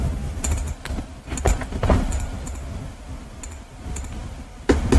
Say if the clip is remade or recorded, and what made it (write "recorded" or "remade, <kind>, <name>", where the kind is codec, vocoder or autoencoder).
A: recorded